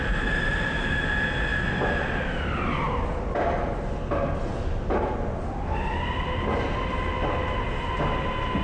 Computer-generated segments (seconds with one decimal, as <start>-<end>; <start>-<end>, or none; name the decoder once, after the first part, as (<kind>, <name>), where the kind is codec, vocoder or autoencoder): 1.5-3.4 (vocoder, BigVGAN v2)